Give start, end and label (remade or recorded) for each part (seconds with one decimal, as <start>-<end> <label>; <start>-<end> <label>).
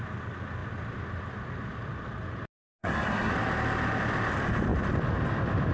0.0-2.8 recorded; 2.8-3.3 remade; 3.3-5.7 recorded